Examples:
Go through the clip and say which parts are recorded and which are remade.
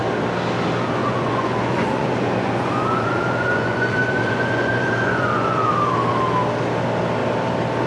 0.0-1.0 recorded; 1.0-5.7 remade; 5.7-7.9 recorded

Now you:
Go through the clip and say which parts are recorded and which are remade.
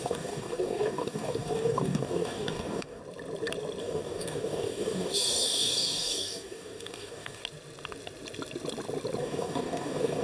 0.0-3.0 remade; 3.0-3.8 recorded; 3.8-7.4 remade; 7.4-9.2 recorded; 9.2-10.2 remade